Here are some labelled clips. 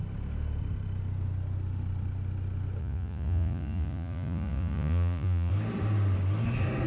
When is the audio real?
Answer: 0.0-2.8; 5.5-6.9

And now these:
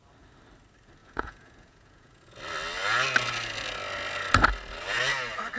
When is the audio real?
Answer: 0.0-1.0; 2.4-5.6

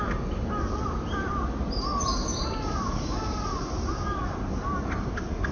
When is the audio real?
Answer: 0.0-5.5

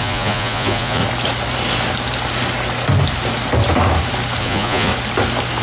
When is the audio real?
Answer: 1.0-4.4; 4.9-5.6

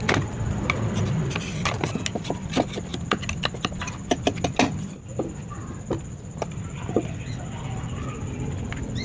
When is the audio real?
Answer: 0.0-9.0

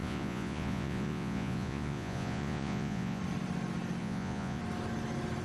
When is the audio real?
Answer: 3.2-4.0; 4.6-5.4